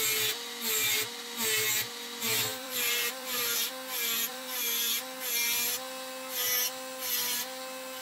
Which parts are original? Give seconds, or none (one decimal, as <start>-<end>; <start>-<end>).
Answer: 0.0-2.5; 3.7-4.3; 4.8-8.0

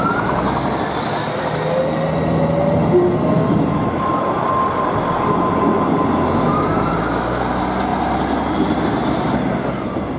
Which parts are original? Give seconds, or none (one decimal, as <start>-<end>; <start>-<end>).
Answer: 0.0-10.2

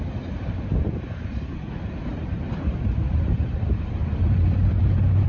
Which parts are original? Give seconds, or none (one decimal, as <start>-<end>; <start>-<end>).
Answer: none